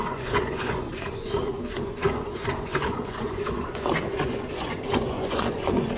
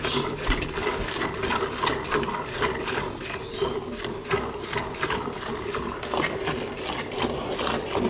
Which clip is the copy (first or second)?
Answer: first